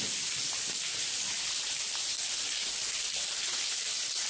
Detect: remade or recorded recorded